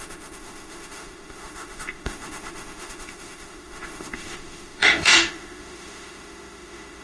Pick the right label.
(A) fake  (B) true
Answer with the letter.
A